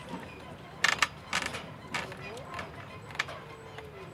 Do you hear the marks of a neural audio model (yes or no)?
no